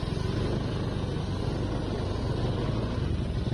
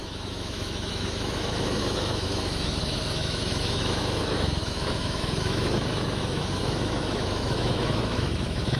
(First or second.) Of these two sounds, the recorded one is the first